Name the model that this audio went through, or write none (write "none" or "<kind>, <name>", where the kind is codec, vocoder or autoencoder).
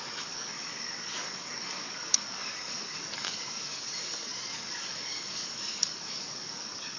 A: codec, DAC